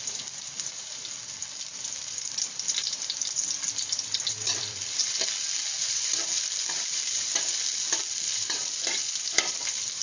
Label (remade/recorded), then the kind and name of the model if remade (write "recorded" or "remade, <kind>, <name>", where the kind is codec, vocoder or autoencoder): remade, vocoder, BigVGAN v2